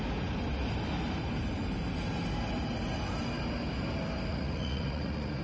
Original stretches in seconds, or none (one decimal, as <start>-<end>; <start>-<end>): 0.0-4.3